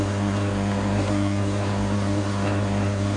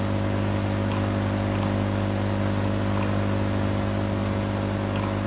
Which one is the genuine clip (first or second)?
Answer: second